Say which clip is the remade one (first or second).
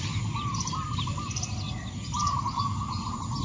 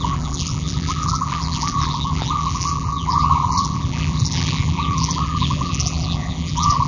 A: second